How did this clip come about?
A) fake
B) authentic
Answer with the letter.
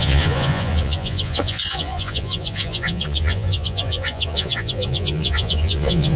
A